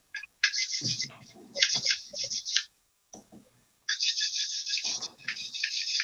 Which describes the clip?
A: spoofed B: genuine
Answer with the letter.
A